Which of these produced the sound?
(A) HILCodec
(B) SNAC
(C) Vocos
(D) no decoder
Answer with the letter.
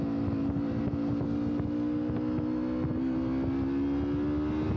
D